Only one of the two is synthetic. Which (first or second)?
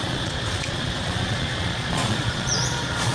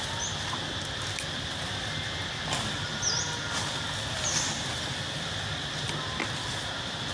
first